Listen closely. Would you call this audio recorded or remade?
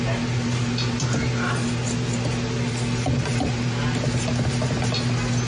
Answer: recorded